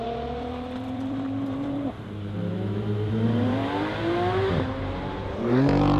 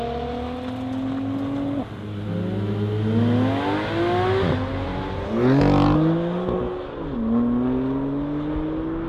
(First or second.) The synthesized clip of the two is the first